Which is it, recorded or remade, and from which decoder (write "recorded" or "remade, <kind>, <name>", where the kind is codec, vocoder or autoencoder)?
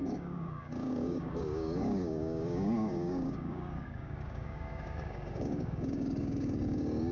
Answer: remade, codec, DAC